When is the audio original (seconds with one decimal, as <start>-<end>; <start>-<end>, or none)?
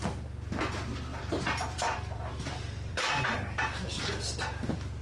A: 0.0-1.1; 4.1-5.0